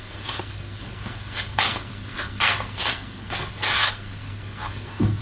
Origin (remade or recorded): remade